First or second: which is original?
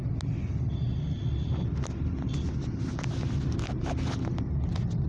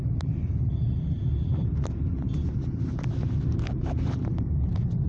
first